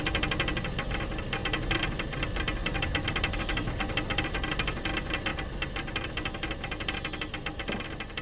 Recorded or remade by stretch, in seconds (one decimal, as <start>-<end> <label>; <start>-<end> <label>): 0.0-1.4 recorded; 1.4-2.2 remade; 2.2-2.6 recorded; 2.6-3.8 remade; 3.8-5.3 recorded; 5.3-6.1 remade; 6.1-8.2 recorded